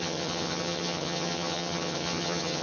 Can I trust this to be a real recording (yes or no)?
no